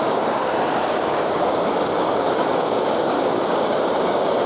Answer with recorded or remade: remade